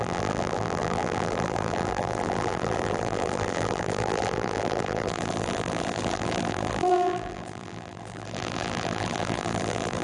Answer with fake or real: fake